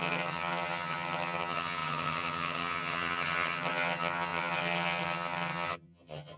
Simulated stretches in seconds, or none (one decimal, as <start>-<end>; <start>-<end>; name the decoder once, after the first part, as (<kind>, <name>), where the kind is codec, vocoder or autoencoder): 0.0-6.4 (vocoder, HiFi-GAN)